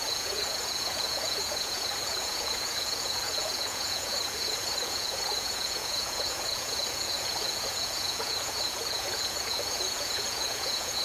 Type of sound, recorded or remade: remade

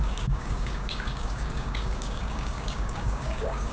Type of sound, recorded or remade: remade